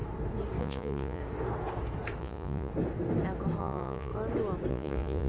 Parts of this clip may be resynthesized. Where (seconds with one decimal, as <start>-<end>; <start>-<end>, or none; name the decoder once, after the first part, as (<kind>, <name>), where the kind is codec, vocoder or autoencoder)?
0.6-1.2 (vocoder, Vocos); 2.2-2.7; 3.6-4.1; 4.7-5.3